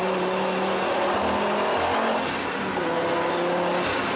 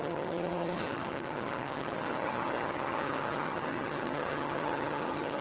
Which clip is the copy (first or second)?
second